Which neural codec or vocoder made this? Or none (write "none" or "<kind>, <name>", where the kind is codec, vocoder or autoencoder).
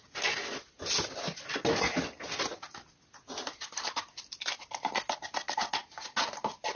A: none